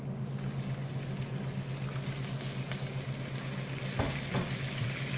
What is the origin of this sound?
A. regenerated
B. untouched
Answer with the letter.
B